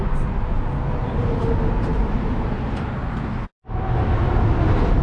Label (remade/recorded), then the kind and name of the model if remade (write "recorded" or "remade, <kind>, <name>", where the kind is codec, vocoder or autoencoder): recorded